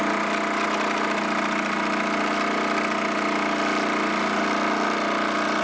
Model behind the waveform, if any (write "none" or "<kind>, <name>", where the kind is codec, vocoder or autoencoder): none